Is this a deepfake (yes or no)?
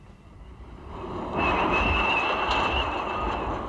yes